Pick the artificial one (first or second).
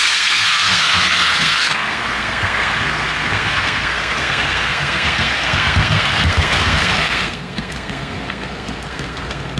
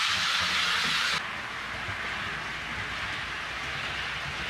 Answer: first